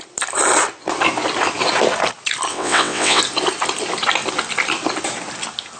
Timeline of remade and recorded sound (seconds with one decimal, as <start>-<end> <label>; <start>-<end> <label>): 0.0-2.5 recorded; 2.5-3.2 remade; 3.2-5.8 recorded